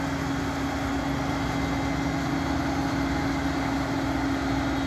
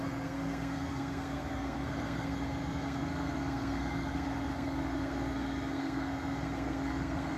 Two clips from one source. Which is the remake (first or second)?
second